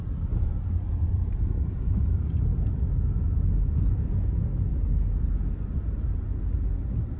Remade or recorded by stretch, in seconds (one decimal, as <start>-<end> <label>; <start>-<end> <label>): 0.0-7.2 recorded